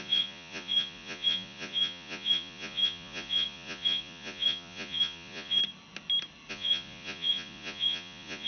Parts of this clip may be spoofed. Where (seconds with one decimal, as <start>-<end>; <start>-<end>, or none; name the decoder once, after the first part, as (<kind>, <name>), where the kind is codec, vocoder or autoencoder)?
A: 0.0-5.6 (vocoder, Vocos); 6.5-8.5